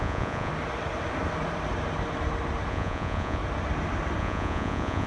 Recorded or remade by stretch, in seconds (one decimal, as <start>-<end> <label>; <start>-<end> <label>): 0.0-0.5 remade; 0.5-2.7 recorded; 2.7-3.4 remade; 3.4-4.2 recorded; 4.2-5.1 remade